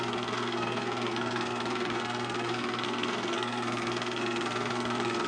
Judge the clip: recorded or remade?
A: remade